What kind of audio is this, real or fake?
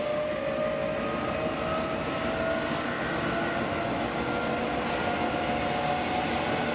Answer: real